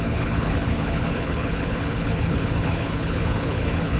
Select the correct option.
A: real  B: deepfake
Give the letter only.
B